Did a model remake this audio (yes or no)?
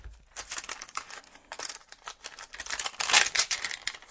no